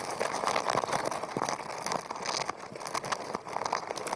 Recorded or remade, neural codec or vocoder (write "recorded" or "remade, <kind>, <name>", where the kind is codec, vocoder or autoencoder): recorded